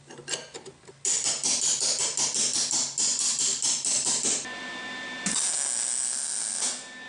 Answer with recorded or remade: recorded